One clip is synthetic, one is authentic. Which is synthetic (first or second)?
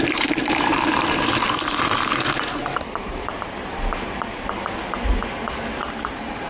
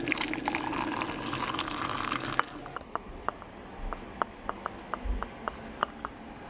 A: first